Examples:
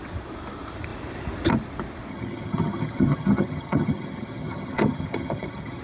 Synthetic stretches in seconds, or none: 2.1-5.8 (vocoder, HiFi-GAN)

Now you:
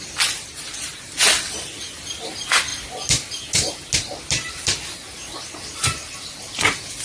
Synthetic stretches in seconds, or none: none

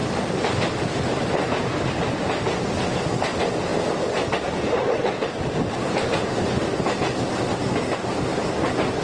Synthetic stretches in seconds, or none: 0.0-0.8 (vocoder, BigVGAN v2)

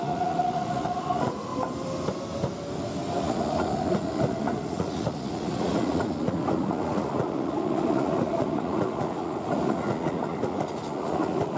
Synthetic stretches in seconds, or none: 0.0-1.5 (vocoder, Vocos); 3.2-11.6

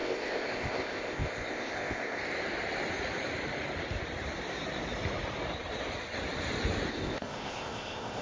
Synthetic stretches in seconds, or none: 0.0-2.2 (codec, ZipCodec); 6.9-8.2

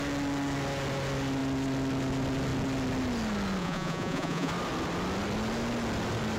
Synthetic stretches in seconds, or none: 3.6-4.5 (vocoder, Vocos)

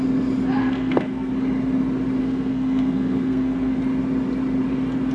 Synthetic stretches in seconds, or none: 0.6-1.3 (codec, SNAC); 2.2-3.8

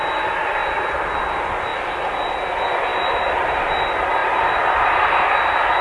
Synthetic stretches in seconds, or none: 2.9-3.8 (vocoder, BigVGAN v2); 4.2-5.0